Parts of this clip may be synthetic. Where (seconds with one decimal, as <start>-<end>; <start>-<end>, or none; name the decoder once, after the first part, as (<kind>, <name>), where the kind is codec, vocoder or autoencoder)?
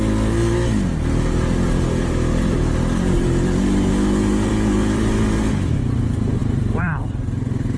4.5-5.1 (vocoder, BigVGAN v2); 6.4-7.8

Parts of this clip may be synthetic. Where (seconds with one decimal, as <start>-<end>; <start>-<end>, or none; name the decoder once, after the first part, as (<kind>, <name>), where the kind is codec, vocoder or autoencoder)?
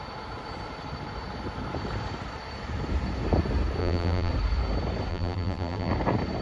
3.8-4.3 (vocoder, BigVGAN v2); 5.1-5.9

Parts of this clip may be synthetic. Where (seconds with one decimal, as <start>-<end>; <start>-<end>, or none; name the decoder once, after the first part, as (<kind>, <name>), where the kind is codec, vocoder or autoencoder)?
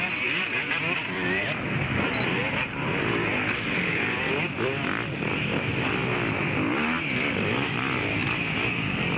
0.0-2.4 (vocoder, BigVGAN v2); 5.3-5.7; 7.5-8.2; 8.7-9.2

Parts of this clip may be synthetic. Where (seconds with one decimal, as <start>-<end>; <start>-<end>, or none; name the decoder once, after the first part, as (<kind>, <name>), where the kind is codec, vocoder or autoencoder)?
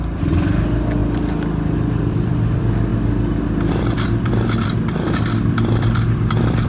0.0-1.0 (vocoder, BigVGAN v2); 2.1-2.9; 3.7-6.7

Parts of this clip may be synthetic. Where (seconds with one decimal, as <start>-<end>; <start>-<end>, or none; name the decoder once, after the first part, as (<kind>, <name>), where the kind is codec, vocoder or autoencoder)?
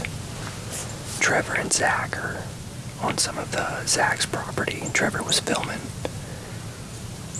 0.0-0.8 (vocoder, BigVGAN v2); 5.2-6.3; 6.9-7.4